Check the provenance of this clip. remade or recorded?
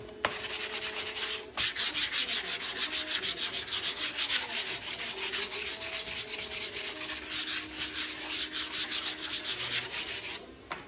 recorded